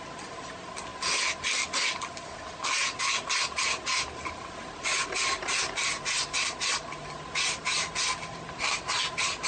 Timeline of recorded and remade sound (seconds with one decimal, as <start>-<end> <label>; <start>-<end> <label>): 0.0-9.5 recorded